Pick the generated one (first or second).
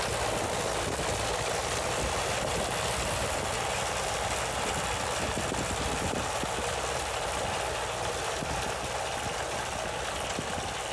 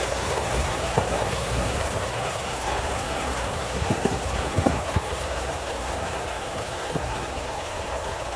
second